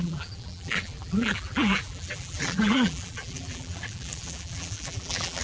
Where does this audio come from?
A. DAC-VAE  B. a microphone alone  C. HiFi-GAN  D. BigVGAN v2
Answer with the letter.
D